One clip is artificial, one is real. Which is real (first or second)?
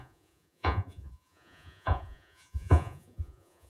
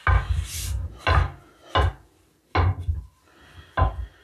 second